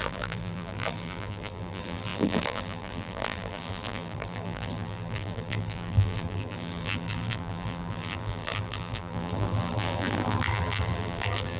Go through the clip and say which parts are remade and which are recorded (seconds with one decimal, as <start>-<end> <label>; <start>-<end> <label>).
0.0-11.6 remade